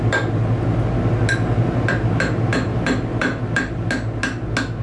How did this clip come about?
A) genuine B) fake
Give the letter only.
A